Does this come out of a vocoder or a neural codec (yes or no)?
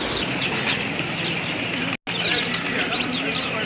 no